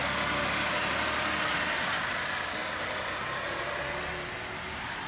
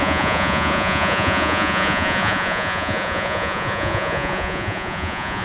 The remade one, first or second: second